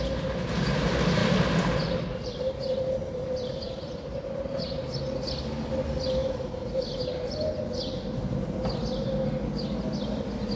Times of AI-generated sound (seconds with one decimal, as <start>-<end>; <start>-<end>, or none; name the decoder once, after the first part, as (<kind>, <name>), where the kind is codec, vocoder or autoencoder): 1.2-5.0 (vocoder, BigVGAN v2); 6.2-7.5